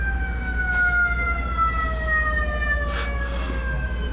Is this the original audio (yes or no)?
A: yes